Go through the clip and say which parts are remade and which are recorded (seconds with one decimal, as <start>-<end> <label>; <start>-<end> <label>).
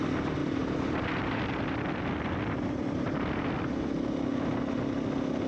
0.0-0.4 recorded; 0.4-3.3 remade; 3.3-5.5 recorded